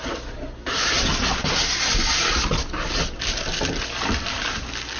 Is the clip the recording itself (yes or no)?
yes